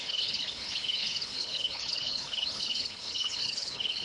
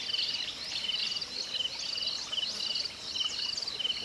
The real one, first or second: second